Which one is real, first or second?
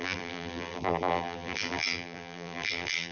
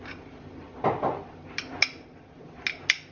second